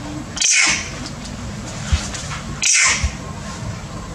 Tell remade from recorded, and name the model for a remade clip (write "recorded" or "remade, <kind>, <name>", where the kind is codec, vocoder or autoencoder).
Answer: recorded